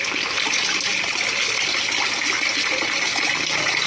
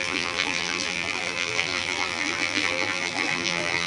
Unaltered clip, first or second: first